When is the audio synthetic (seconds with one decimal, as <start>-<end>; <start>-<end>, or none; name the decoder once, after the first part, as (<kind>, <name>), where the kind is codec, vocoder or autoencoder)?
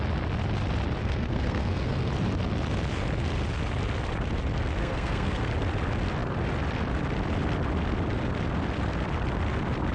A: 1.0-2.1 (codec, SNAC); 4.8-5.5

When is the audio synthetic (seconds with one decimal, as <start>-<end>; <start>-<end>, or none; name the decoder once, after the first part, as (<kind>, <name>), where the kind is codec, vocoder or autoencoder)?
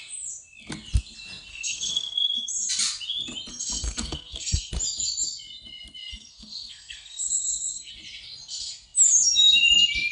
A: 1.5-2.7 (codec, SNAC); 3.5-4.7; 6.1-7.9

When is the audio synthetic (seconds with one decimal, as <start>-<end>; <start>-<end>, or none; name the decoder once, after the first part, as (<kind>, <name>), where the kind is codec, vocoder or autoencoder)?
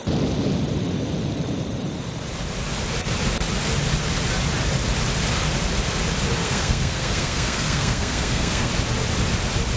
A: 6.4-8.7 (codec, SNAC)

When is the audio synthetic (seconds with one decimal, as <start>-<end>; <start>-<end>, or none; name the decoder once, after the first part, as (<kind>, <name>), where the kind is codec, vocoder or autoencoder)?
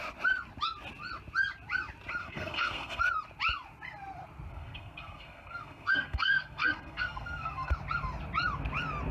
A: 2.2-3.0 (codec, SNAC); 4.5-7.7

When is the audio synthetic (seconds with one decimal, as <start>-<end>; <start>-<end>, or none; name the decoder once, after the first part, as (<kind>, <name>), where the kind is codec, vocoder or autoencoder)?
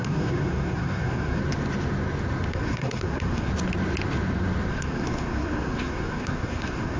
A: 0.0-1.4 (codec, SNAC); 2.5-3.5; 4.7-7.0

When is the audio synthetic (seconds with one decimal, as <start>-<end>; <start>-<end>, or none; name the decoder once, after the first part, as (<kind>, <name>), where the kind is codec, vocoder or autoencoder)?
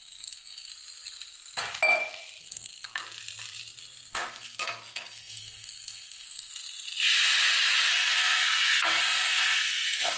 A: 0.0-0.7 (codec, SNAC); 2.4-3.0; 4.1-6.5; 7.9-10.2